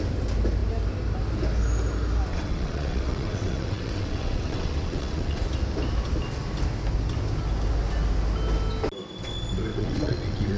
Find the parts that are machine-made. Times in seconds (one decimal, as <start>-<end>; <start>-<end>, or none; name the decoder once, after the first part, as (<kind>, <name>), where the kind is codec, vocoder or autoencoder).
2.3-5.5 (vocoder, WaveNeXt); 9.7-10.6

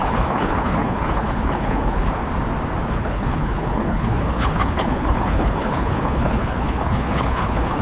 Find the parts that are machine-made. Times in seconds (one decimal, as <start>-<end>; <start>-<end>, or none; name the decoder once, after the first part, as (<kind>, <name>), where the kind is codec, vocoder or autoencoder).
0.0-2.2 (codec, HILCodec); 2.9-7.8

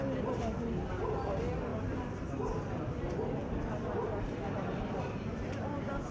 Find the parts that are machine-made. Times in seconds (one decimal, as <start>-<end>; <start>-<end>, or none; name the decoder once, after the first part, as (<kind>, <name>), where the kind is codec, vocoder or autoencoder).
none